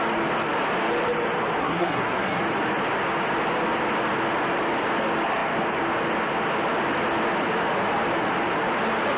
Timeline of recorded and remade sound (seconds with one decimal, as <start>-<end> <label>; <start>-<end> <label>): 0.0-1.6 recorded; 1.6-2.4 remade; 2.4-9.2 recorded